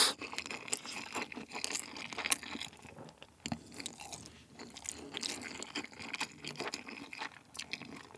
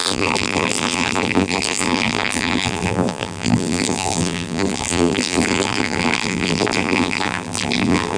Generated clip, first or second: second